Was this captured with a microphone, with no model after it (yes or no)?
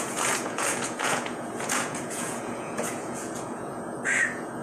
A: no